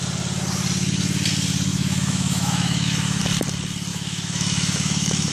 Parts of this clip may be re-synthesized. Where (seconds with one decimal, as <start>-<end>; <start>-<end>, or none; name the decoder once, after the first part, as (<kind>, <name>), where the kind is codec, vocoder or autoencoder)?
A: 1.7-3.2 (autoencoder, DAC-VAE); 3.9-5.3